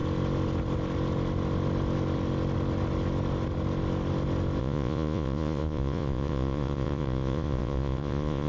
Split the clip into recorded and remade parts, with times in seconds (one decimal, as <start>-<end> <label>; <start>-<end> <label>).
0.0-4.6 recorded; 4.6-8.5 remade

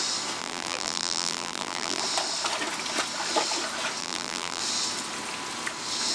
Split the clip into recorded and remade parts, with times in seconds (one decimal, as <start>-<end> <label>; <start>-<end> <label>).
0.0-0.4 recorded; 0.4-2.0 remade; 2.0-4.0 recorded; 4.0-4.6 remade; 4.6-6.1 recorded

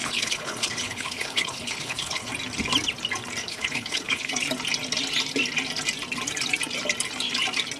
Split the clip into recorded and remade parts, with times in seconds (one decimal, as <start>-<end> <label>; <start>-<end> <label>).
0.0-2.3 remade; 2.3-3.4 recorded; 3.4-4.3 remade; 4.3-7.8 recorded

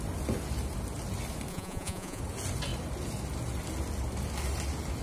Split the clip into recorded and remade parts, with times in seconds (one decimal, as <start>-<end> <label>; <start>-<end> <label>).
0.0-1.5 recorded; 1.5-2.2 remade; 2.2-5.0 recorded

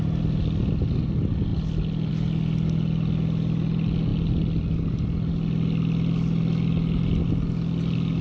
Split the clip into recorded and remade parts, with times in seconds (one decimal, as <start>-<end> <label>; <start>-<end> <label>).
0.0-8.2 recorded